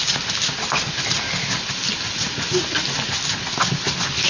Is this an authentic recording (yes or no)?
yes